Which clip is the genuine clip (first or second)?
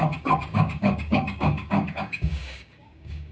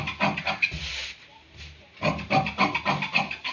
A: second